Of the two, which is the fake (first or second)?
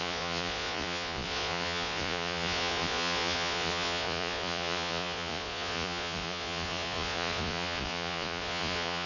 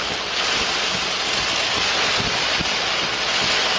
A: first